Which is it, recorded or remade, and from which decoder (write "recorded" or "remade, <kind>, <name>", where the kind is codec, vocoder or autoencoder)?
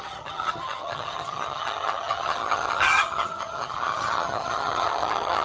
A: remade, vocoder, HiFi-GAN